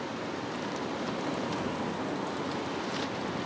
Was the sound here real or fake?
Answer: real